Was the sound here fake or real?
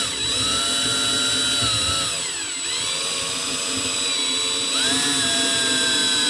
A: real